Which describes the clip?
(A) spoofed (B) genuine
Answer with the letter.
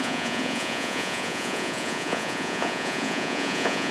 A